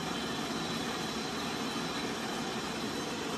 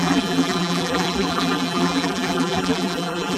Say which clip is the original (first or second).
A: first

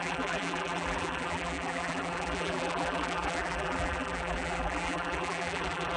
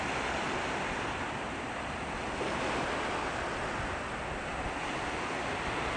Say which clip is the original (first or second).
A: second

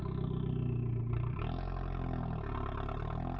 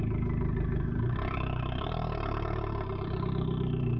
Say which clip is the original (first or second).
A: first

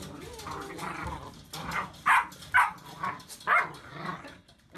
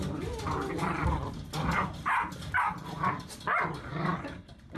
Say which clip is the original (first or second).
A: first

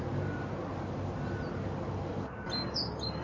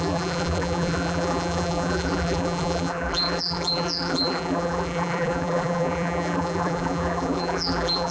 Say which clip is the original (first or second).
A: first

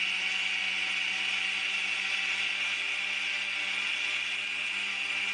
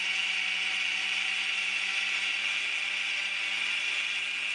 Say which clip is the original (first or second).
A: first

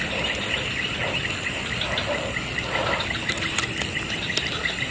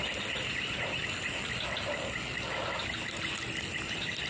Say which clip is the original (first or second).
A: second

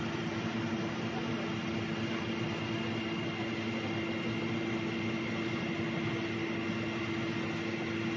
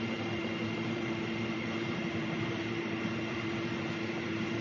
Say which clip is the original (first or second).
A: first